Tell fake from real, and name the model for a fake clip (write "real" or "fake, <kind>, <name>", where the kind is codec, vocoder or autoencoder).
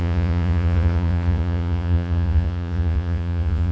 fake, vocoder, Vocos